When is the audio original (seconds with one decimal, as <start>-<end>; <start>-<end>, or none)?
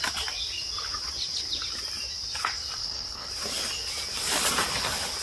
0.0-2.8; 3.3-5.2